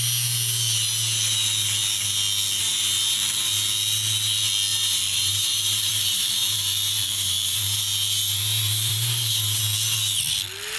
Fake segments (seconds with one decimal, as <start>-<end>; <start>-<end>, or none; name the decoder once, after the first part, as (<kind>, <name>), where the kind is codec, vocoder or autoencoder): 4.7-9.6 (vocoder, BigVGAN v2)